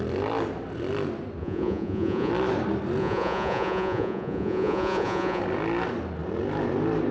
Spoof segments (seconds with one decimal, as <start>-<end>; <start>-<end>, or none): 1.4-2.3; 3.0-5.4